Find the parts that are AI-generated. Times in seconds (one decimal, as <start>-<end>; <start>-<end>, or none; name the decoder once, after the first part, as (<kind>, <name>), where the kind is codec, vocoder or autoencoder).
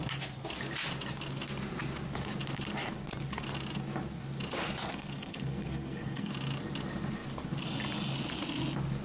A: 4.9-6.3 (codec, SNAC)